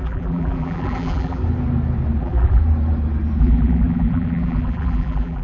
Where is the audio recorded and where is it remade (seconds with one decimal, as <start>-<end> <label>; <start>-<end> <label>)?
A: 0.0-1.4 remade; 1.4-2.2 recorded; 2.2-2.6 remade; 2.6-3.4 recorded; 3.4-5.4 remade